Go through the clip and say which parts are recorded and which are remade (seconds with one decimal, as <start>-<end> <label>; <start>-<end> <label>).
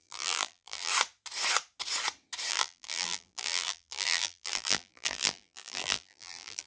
0.0-0.9 remade; 0.9-2.5 recorded; 2.5-6.7 remade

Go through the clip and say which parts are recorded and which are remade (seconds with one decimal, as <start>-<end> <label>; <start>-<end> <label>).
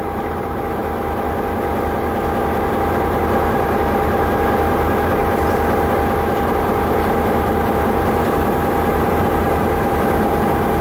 0.0-0.8 remade; 0.8-2.7 recorded; 2.7-5.2 remade; 5.2-6.4 recorded; 6.4-10.8 remade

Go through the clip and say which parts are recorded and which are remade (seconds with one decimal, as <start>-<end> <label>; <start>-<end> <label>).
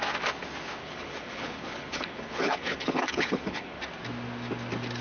0.0-0.8 recorded; 0.8-3.8 remade; 3.8-5.0 recorded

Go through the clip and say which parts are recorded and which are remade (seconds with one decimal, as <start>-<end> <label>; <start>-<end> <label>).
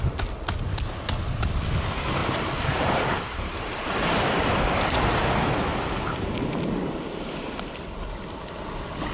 0.0-2.2 recorded; 2.2-4.6 remade; 4.6-9.1 recorded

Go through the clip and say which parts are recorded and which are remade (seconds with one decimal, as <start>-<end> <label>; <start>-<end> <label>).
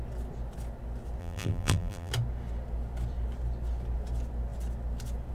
0.0-1.2 recorded; 1.2-2.1 remade; 2.1-5.3 recorded